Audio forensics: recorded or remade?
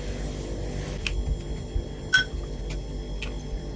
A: recorded